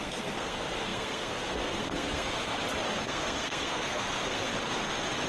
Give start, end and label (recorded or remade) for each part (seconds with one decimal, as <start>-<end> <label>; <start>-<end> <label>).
0.0-2.5 remade; 2.5-3.0 recorded; 3.0-4.5 remade; 4.5-5.3 recorded

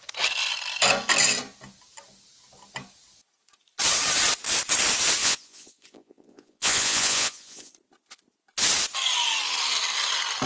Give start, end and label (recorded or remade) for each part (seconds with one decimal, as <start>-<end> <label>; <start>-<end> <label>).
0.0-5.2 recorded; 5.2-7.7 remade; 7.7-10.5 recorded

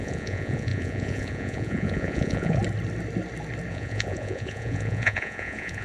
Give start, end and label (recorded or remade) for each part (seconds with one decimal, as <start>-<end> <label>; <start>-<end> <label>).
0.0-2.6 remade; 2.6-3.7 recorded; 3.7-5.8 remade

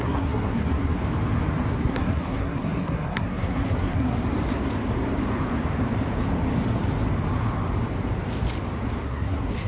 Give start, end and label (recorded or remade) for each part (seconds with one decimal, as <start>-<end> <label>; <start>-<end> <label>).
0.0-1.0 remade; 1.0-1.7 recorded; 1.7-4.2 remade; 4.2-9.0 recorded; 9.0-9.7 remade